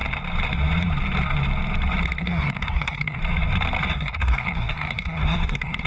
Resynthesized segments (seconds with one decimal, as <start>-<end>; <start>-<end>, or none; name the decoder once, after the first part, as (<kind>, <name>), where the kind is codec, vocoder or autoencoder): 2.2-3.2 (codec, SNAC); 3.9-5.9